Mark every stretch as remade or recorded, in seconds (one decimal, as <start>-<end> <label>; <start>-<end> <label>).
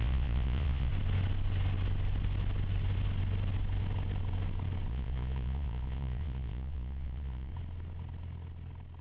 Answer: 0.0-0.9 remade; 0.9-4.9 recorded; 4.9-7.5 remade; 7.5-9.0 recorded